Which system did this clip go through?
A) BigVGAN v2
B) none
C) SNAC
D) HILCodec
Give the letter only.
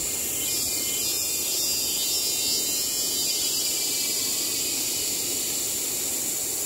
B